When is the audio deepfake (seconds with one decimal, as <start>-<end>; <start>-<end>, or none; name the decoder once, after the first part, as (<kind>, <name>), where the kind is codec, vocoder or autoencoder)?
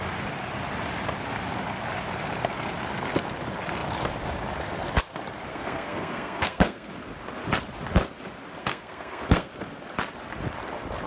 5.5-6.9 (codec, SNAC); 8.6-9.5